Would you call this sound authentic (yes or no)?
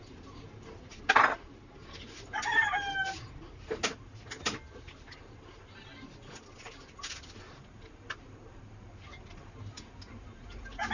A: yes